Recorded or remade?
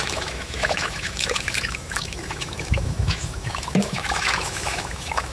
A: remade